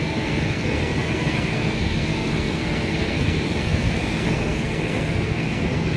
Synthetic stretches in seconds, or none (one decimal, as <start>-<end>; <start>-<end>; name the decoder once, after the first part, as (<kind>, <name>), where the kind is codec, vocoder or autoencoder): 0.0-6.0 (codec, SNAC)